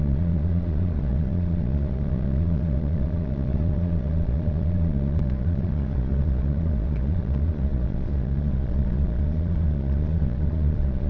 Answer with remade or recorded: remade